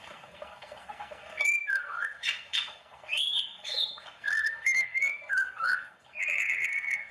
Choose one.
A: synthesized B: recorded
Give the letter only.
A